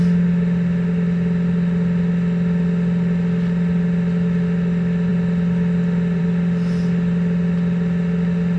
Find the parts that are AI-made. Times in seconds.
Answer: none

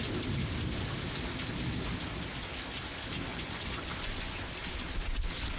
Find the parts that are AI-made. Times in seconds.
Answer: 3.3-4.4 (vocoder, Vocos)

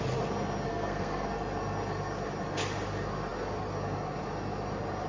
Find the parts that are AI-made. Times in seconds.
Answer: 0.7-1.3 (codec, SNAC)